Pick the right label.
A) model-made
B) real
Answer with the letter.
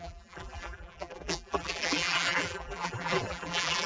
A